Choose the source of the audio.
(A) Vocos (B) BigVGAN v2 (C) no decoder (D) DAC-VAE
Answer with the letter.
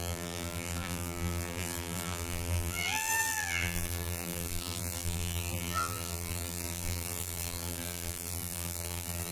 B